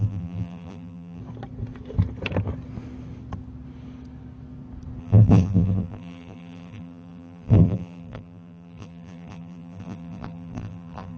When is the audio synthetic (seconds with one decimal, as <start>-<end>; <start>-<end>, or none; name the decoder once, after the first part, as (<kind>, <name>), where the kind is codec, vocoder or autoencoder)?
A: 0.0-1.2 (vocoder, BigVGAN v2); 5.0-11.2